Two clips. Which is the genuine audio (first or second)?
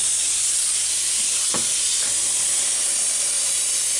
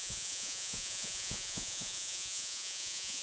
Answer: first